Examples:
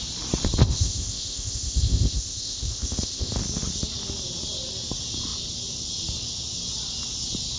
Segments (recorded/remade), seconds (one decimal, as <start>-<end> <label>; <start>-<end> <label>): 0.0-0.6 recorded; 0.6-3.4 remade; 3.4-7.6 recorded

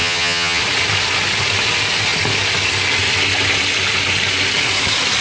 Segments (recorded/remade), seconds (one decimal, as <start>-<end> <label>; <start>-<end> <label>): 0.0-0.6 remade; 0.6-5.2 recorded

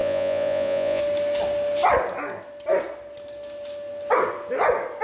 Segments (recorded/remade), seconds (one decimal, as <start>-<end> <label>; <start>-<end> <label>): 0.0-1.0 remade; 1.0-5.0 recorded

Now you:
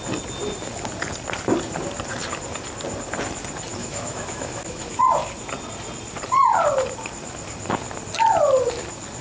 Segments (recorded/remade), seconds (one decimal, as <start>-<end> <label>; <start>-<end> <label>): 0.0-3.8 recorded; 3.8-5.0 remade; 5.0-9.2 recorded